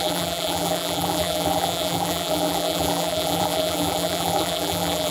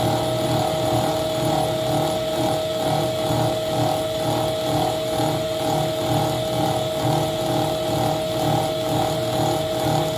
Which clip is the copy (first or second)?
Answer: first